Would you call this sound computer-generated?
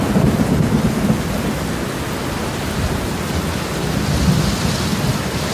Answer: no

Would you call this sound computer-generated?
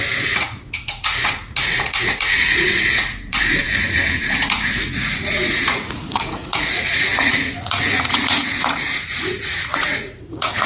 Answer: yes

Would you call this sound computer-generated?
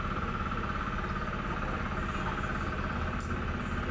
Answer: no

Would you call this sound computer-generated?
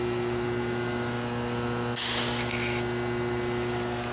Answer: no